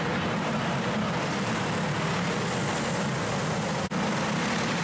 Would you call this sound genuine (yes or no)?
yes